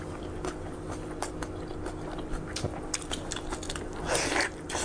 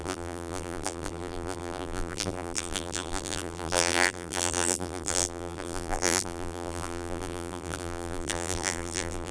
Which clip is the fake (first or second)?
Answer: second